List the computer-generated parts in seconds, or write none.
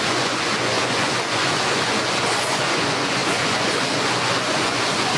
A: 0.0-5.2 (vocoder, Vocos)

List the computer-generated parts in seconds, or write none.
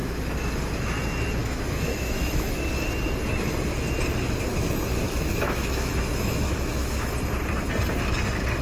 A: 0.0-0.5 (autoencoder, DAC-VAE); 1.4-2.7; 4.5-7.1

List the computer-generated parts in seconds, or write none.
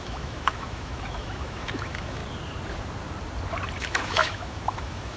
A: 0.0-2.2 (autoencoder, DAC-VAE); 3.8-5.2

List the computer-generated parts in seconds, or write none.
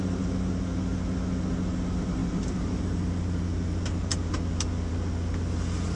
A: none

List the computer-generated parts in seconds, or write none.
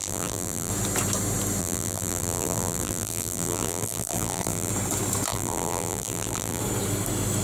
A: 0.0-0.7 (vocoder, BigVGAN v2); 1.6-4.7; 5.3-6.6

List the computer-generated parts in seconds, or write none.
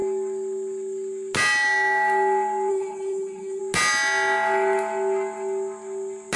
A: 2.7-3.6 (codec, HILCodec)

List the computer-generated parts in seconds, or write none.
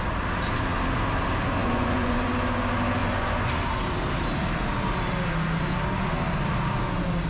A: 1.6-2.3 (vocoder, Vocos); 3.0-3.5